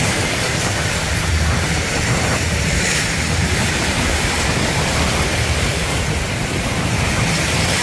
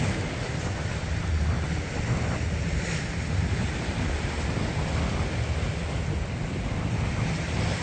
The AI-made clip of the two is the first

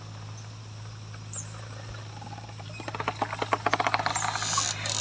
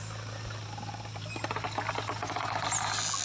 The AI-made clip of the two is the first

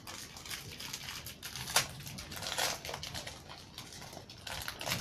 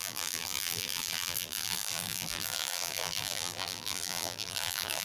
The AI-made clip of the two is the second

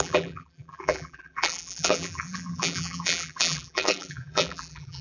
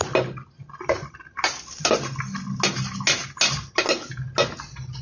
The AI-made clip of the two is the first